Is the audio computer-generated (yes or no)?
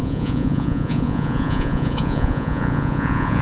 yes